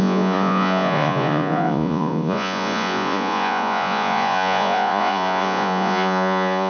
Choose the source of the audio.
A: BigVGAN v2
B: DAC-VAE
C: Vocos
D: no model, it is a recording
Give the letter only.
C